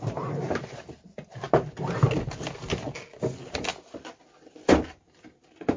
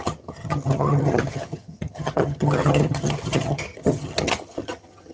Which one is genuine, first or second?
first